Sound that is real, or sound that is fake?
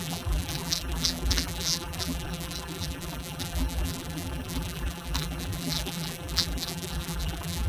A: fake